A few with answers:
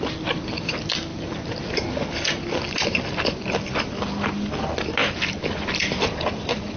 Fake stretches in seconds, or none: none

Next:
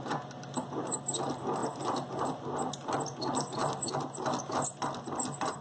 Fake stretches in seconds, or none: none

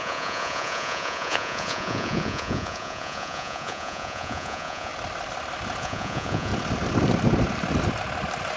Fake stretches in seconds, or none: 0.0-4.9; 5.8-6.5

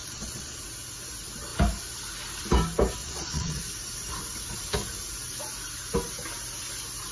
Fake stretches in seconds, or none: 0.0-0.6; 3.0-3.6

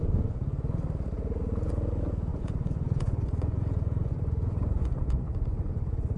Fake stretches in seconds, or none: 2.3-6.2